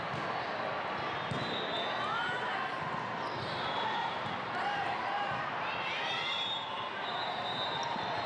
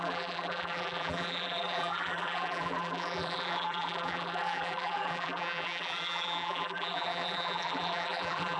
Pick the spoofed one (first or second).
second